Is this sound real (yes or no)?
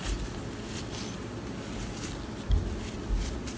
yes